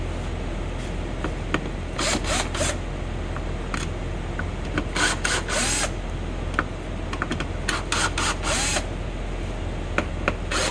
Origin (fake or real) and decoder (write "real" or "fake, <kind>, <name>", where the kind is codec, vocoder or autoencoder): real